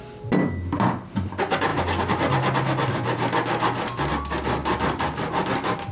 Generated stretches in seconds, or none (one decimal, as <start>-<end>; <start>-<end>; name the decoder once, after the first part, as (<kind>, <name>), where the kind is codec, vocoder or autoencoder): none